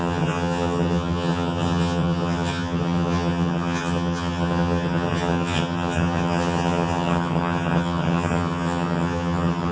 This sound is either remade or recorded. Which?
remade